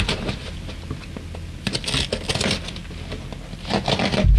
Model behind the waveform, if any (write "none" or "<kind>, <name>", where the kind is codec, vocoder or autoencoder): none